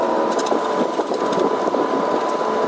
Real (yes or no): no